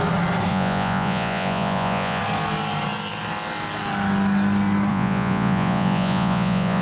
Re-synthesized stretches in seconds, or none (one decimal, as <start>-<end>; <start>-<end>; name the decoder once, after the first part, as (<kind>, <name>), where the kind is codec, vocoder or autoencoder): 0.5-2.2 (vocoder, Vocos); 4.9-6.8